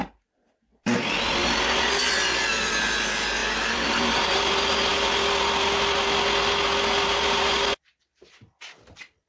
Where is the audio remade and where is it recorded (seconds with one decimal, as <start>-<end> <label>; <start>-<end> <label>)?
0.0-3.4 recorded; 3.4-4.5 remade; 4.5-9.3 recorded